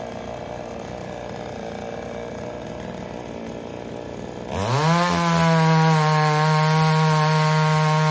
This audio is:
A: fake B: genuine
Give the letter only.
B